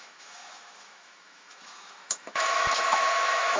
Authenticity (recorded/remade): remade